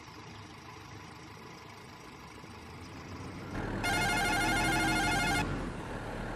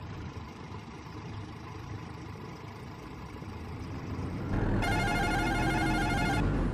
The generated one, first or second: second